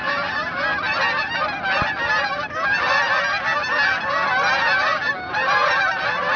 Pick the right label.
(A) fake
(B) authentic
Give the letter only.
B